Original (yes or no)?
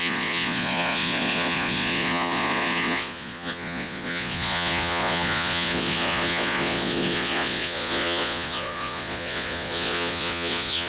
no